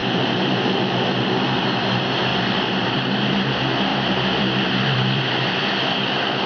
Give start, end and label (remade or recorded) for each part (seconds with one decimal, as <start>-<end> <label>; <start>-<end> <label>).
0.0-0.8 remade; 0.8-2.3 recorded; 2.3-2.9 remade; 2.9-3.9 recorded; 3.9-6.1 remade; 6.1-6.5 recorded